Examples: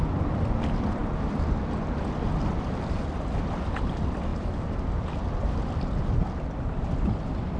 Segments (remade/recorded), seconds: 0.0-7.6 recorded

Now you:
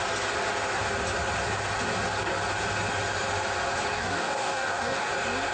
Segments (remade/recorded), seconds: 0.0-3.9 recorded; 3.9-5.1 remade; 5.1-5.5 recorded